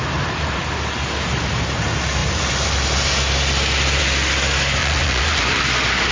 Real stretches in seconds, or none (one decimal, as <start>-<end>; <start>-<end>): 0.0-4.8; 5.6-6.1